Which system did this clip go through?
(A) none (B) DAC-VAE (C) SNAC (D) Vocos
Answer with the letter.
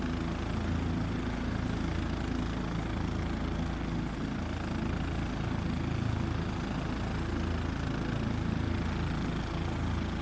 A